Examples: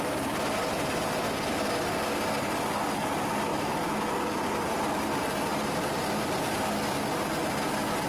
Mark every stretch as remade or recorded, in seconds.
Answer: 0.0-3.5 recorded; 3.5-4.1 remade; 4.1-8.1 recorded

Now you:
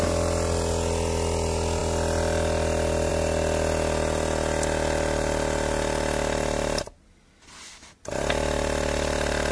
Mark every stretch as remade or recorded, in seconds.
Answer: 0.0-9.5 recorded

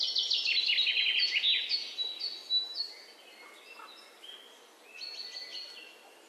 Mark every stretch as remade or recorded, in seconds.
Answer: 0.0-6.3 recorded

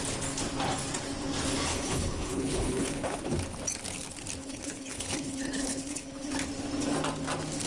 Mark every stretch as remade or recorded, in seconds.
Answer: 0.0-1.7 recorded; 1.7-3.4 remade; 3.4-4.4 recorded; 4.4-6.3 remade; 6.3-7.7 recorded

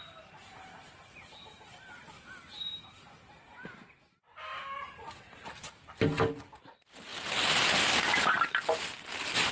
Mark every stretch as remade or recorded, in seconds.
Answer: 0.0-9.5 recorded

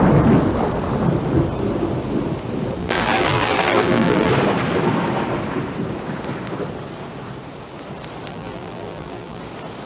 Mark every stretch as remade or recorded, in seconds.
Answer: 0.0-2.8 recorded; 2.8-4.3 remade; 4.3-8.3 recorded; 8.3-9.4 remade; 9.4-9.9 recorded

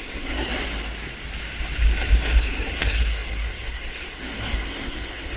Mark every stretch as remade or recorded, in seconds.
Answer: 0.0-0.5 remade; 0.5-2.4 recorded; 2.4-5.4 remade

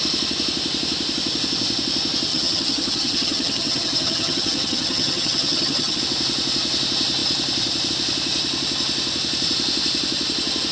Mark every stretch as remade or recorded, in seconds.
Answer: 0.0-2.3 recorded; 2.3-6.0 remade; 6.0-10.7 recorded